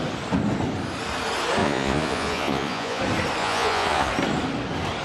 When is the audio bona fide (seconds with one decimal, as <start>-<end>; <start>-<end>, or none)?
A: 0.0-1.6; 3.0-3.4; 4.1-5.0